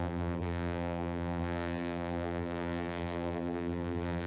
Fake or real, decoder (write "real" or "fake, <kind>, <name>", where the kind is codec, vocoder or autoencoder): fake, vocoder, BigVGAN v2